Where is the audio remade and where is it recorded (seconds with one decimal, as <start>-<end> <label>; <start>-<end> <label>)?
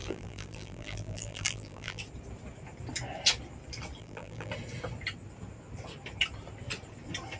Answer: 0.0-2.0 remade; 2.0-4.0 recorded; 4.0-4.5 remade; 4.5-7.4 recorded